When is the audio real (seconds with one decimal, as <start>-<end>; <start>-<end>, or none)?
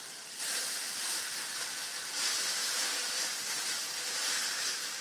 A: 1.9-4.5